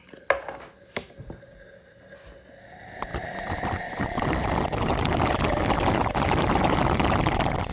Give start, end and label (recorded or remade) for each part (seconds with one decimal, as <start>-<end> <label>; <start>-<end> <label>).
0.0-7.7 recorded